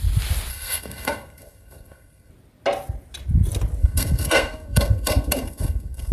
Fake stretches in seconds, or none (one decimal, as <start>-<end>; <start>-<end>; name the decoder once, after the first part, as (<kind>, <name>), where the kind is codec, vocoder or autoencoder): 0.5-2.3 (codec, SNAC); 3.8-6.1